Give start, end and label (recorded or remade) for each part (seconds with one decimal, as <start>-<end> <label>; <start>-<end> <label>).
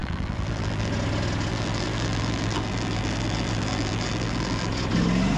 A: 0.0-0.9 remade; 0.9-1.5 recorded; 1.5-4.7 remade; 4.7-5.4 recorded